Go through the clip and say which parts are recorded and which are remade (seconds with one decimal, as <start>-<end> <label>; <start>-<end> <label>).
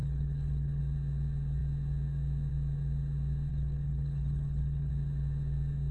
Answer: 0.0-0.8 remade; 0.8-3.5 recorded; 3.5-4.9 remade; 4.9-5.9 recorded